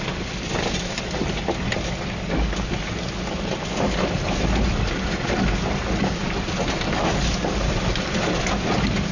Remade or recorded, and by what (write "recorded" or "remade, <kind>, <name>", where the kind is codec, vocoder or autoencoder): recorded